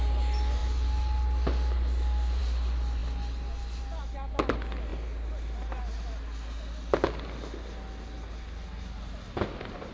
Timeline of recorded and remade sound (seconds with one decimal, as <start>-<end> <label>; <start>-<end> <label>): 0.0-9.9 recorded